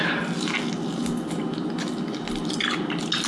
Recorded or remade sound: recorded